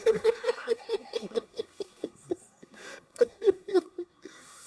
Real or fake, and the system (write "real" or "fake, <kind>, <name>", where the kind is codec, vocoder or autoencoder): fake, codec, SNAC